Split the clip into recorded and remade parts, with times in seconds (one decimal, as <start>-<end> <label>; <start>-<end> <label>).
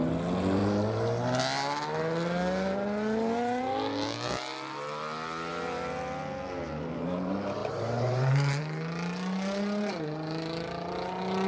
0.0-7.6 recorded; 7.6-8.6 remade; 8.6-11.5 recorded